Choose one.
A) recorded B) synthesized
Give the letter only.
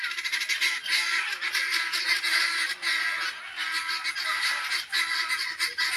A